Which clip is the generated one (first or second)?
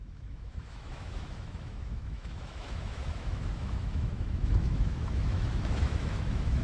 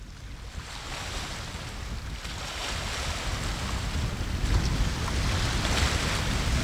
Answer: first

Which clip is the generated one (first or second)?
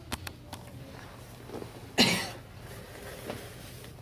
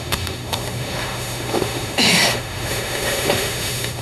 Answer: second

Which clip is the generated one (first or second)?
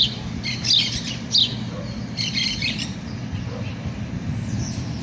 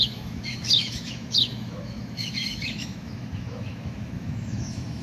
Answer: second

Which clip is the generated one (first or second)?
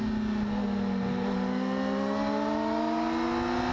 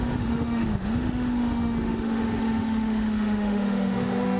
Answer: second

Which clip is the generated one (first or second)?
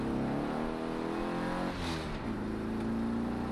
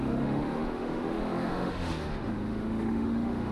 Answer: second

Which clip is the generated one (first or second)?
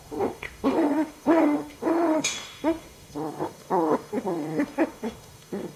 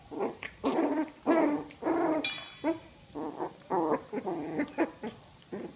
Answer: first